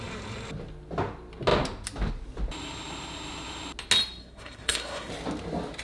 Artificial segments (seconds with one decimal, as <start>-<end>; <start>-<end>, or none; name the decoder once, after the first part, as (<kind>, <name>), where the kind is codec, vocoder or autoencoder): 4.2-5.1 (codec, SNAC)